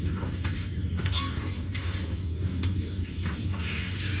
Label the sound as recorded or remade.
remade